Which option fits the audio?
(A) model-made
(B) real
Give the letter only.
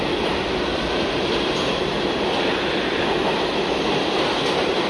B